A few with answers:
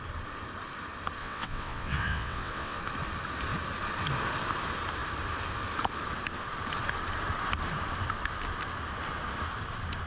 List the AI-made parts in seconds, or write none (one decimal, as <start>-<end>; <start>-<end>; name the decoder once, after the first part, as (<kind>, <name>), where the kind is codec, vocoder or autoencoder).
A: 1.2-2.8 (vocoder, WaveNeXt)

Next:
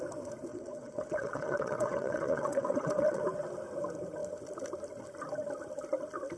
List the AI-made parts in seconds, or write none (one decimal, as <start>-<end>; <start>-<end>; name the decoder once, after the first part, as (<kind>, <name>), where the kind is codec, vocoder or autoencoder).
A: 0.5-3.2 (vocoder, WaveNeXt)

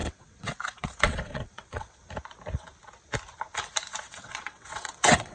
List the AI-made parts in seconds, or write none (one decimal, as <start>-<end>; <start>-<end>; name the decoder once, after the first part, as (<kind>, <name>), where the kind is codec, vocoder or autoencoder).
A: 0.0-2.0 (vocoder, WaveNeXt); 4.0-5.3